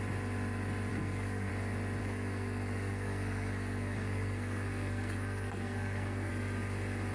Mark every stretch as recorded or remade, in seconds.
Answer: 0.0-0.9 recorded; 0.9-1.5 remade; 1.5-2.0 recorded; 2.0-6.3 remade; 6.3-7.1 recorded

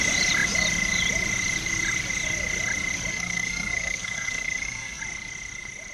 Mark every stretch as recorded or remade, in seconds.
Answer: 0.0-3.1 recorded; 3.1-5.0 remade; 5.0-5.9 recorded

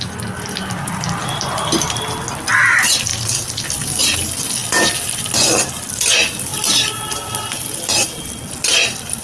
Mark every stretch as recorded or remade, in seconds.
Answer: 0.0-9.2 recorded

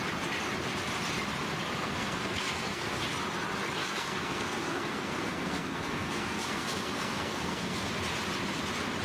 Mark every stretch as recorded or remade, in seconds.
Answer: 0.0-1.8 recorded; 1.8-3.0 remade; 3.0-3.8 recorded; 3.8-7.9 remade; 7.9-9.0 recorded

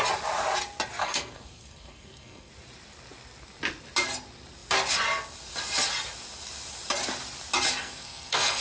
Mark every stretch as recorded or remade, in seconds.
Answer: 0.0-1.0 recorded; 1.0-2.5 remade; 2.5-7.8 recorded; 7.8-8.6 remade

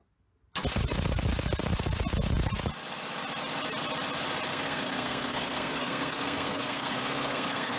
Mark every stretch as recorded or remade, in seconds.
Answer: 0.0-4.5 recorded; 4.5-7.8 remade

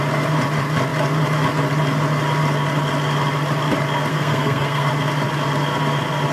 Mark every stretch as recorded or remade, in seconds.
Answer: 0.0-4.1 recorded; 4.1-4.9 remade; 4.9-6.3 recorded

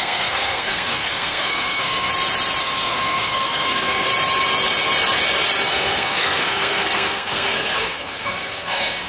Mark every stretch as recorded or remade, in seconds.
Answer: 0.0-2.1 remade; 2.1-2.6 recorded; 2.6-4.1 remade; 4.1-5.7 recorded; 5.7-9.1 remade